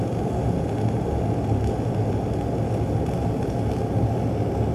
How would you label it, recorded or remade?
recorded